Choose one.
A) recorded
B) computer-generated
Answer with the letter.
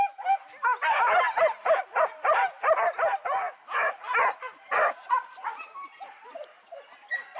A